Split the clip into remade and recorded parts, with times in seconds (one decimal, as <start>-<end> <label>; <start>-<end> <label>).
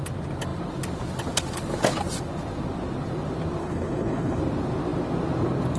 0.0-3.6 recorded; 3.6-4.4 remade; 4.4-5.8 recorded